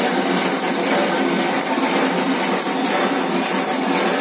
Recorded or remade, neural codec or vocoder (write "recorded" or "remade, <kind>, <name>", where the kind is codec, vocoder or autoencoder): recorded